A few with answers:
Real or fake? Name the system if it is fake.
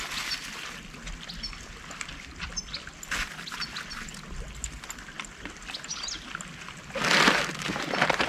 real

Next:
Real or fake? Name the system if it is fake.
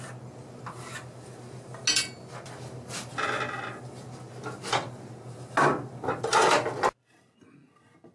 real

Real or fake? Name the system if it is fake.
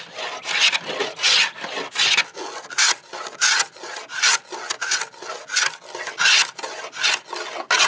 real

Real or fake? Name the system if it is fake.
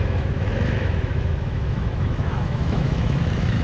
fake, autoencoder, DAC-VAE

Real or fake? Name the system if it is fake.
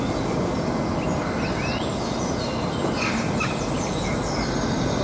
real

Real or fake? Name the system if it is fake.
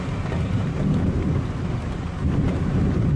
real